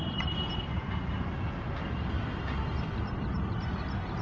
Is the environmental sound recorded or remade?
recorded